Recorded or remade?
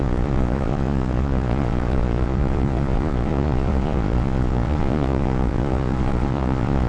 remade